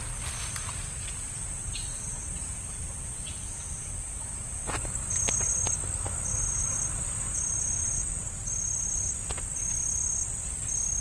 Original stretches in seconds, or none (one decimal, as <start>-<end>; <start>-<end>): 0.0-1.6; 2.3-11.0